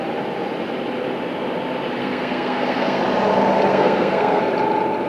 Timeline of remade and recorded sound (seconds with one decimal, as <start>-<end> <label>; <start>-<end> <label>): 0.0-2.0 recorded; 2.0-3.0 remade; 3.0-3.7 recorded; 3.7-4.4 remade; 4.4-5.1 recorded